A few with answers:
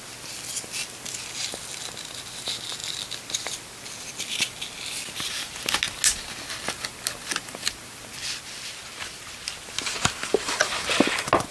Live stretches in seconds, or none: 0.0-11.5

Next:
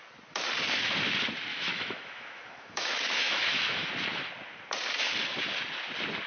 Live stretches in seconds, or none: 0.0-1.5; 3.9-6.3

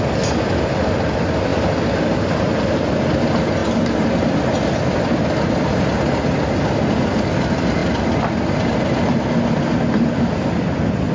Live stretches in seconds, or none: 0.0-11.1